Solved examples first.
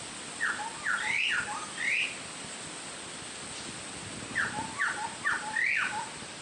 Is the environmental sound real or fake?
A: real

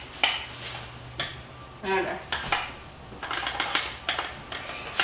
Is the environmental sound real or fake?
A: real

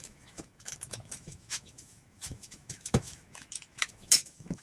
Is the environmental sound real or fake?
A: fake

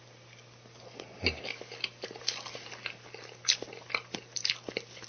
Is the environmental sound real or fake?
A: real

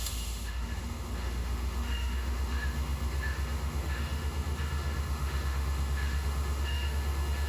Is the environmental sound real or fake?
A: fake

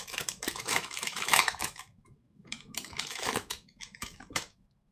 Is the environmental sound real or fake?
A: fake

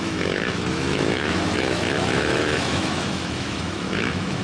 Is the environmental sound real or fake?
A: fake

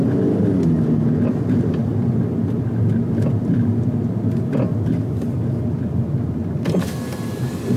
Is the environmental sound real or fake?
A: real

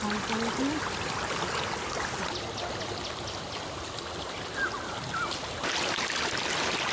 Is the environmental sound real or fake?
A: real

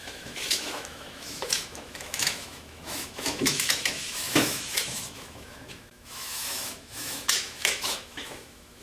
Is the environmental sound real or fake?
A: fake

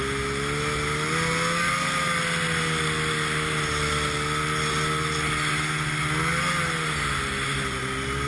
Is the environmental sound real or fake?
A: real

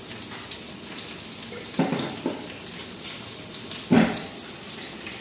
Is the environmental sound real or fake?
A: real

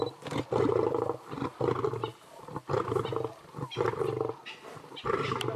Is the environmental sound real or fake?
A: real